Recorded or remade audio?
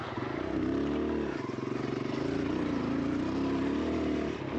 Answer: recorded